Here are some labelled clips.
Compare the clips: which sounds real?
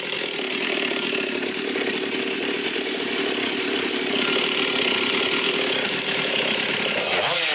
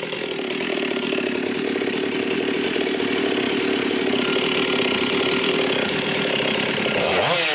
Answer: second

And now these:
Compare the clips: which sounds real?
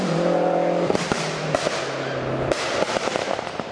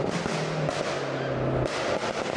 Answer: second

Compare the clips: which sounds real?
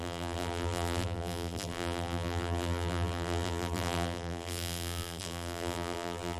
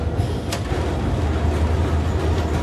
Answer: second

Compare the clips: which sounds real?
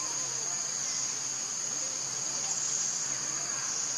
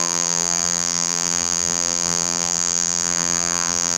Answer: first